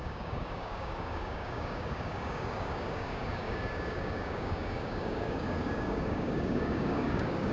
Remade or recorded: remade